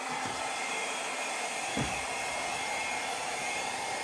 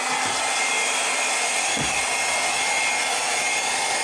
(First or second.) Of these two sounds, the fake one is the first